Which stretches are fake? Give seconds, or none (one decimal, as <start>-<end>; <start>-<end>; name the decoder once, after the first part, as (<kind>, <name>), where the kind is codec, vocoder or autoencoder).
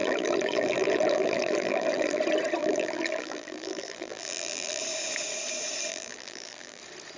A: 0.0-2.2 (vocoder, BigVGAN v2); 2.6-4.8; 5.9-6.8